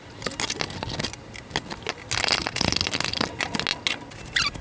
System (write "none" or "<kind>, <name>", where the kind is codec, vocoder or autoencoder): none